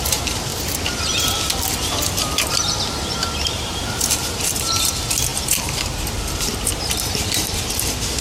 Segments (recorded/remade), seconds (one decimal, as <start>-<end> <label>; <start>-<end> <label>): 0.0-0.5 remade; 0.5-2.1 recorded; 2.1-8.2 remade